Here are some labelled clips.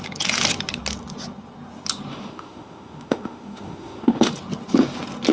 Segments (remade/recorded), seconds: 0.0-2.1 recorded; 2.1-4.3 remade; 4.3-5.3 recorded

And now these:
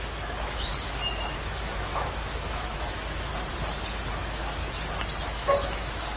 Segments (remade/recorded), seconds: 0.0-3.3 remade; 3.3-4.1 recorded; 4.1-4.6 remade; 4.6-5.2 recorded; 5.2-6.2 remade

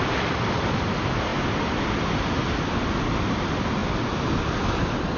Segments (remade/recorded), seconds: 0.0-5.2 recorded

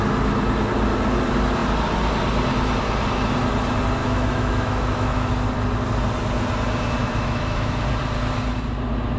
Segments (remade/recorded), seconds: 0.0-4.0 recorded; 4.0-5.3 remade; 5.3-7.0 recorded; 7.0-7.8 remade; 7.8-9.2 recorded

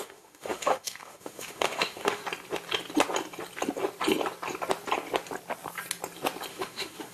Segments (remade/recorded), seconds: 0.0-2.2 remade; 2.2-6.5 recorded; 6.5-7.1 remade

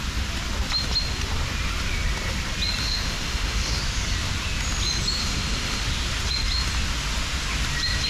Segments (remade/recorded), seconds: 0.0-2.8 recorded; 2.8-3.8 remade; 3.8-5.2 recorded; 5.2-5.8 remade; 5.8-8.1 recorded

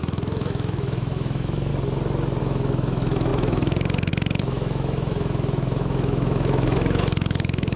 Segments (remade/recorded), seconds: 0.0-1.7 remade; 1.7-2.4 recorded; 2.4-7.8 remade